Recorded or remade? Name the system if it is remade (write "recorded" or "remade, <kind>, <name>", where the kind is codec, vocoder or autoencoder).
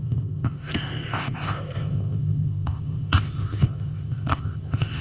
remade, codec, ZipCodec